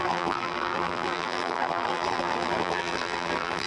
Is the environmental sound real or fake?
fake